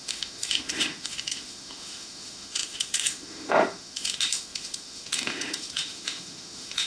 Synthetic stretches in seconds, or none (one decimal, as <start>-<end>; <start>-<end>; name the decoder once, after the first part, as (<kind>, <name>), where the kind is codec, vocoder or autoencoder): 0.0-6.9 (autoencoder, DAC-VAE)